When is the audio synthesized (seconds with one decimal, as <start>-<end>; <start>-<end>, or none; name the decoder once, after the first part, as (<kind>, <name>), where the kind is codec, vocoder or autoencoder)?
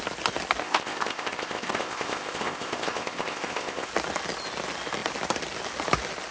0.6-3.9 (codec, ZipCodec)